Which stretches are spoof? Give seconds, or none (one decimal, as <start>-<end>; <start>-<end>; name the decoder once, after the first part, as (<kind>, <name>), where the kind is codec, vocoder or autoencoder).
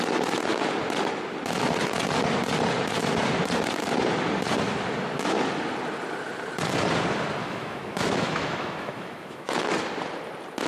7.4-9.6 (autoencoder, DAC-VAE)